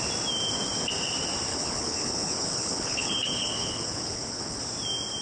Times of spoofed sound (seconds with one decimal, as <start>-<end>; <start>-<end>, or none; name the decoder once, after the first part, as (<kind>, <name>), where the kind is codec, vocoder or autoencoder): 1.5-4.6 (codec, HILCodec)